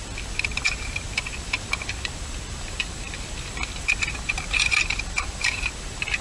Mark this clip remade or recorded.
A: remade